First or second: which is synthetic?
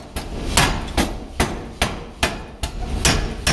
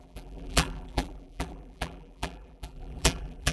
second